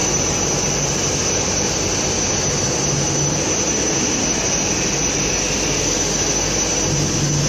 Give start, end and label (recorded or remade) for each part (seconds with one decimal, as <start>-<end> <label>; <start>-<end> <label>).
0.0-7.5 recorded